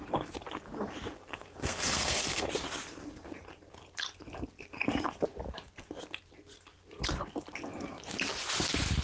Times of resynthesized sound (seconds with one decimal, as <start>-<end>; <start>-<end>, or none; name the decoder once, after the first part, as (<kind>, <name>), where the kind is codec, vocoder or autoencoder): 1.3-2.5 (codec, SNAC)